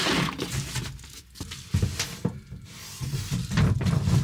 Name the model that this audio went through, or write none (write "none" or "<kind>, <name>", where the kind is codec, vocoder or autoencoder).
none